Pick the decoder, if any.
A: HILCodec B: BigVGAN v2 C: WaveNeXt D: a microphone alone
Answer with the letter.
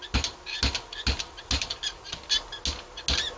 D